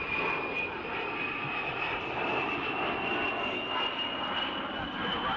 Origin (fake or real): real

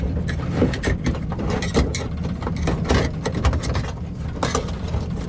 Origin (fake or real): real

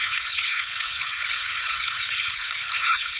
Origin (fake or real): fake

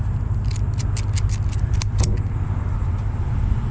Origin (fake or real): real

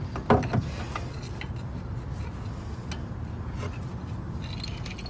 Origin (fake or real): real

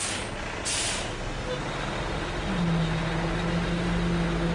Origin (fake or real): real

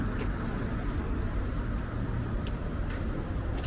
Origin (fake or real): real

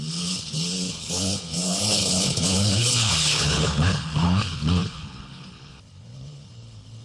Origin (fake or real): fake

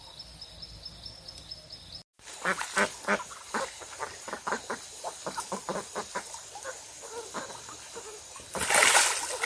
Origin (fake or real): real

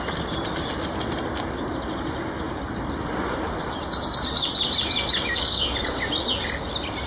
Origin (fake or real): real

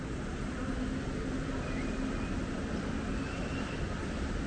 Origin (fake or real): real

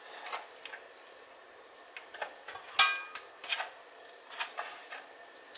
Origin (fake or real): real